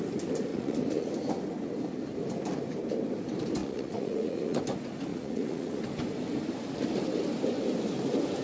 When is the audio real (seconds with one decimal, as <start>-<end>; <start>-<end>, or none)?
0.0-0.5; 1.1-3.6; 4.6-5.1; 5.8-8.4